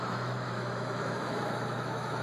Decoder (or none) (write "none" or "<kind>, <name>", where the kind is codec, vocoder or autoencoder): autoencoder, DAC-VAE